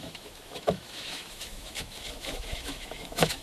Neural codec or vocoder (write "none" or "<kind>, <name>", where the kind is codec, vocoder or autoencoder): autoencoder, DAC-VAE